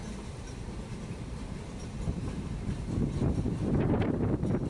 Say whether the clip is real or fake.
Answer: fake